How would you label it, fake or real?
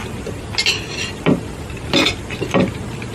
real